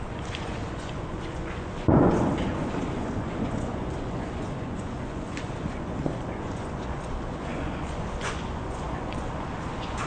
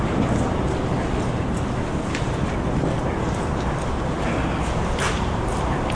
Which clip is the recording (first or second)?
second